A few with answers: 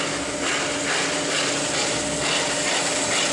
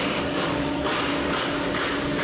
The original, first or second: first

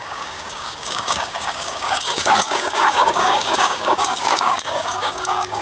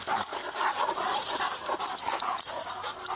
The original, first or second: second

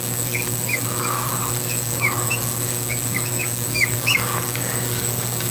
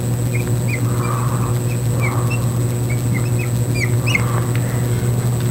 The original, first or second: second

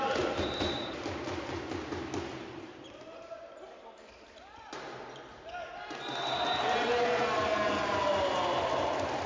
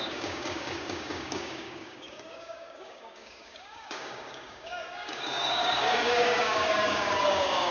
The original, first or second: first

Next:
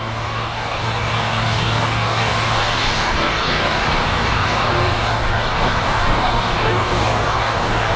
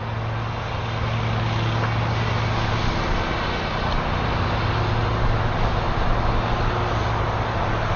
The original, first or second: second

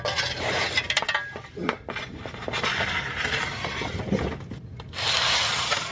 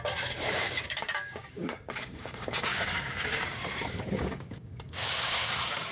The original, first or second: first